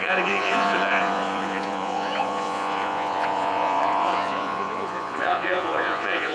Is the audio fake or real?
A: fake